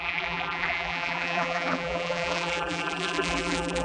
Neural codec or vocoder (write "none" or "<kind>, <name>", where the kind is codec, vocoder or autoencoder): vocoder, BigVGAN v2